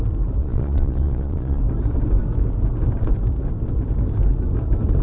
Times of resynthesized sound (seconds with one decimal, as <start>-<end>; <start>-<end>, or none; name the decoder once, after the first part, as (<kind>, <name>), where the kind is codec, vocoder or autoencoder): 0.4-1.6 (vocoder, Vocos)